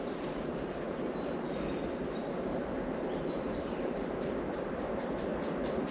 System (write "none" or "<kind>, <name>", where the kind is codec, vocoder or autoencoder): vocoder, BigVGAN v2